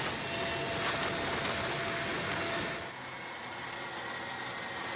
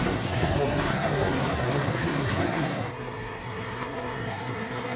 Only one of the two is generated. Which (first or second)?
second